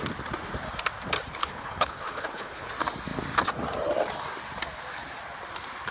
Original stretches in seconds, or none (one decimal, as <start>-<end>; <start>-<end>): 0.0-1.4; 2.7-5.9